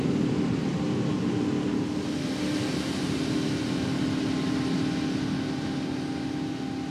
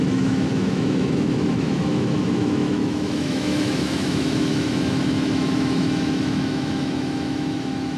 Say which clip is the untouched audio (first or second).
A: first